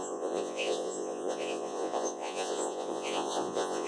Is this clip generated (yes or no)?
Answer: yes